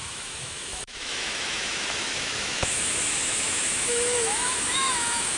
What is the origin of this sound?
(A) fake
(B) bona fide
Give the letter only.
A